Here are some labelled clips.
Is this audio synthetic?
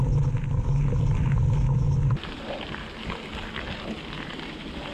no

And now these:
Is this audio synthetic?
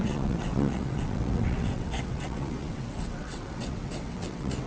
yes